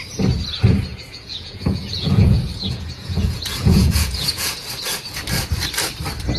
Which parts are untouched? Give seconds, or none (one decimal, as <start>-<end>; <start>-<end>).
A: 0.0-0.9; 4.7-6.4